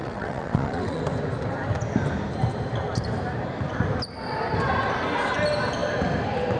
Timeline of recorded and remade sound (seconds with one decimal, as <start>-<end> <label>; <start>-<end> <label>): 0.0-1.0 remade; 1.0-6.6 recorded